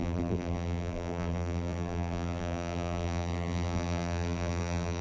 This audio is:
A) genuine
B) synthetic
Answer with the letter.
B